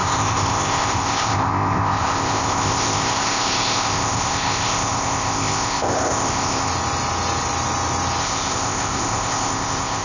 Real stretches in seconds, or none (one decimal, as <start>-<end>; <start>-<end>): 6.7-8.2